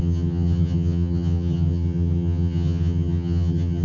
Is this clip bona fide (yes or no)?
no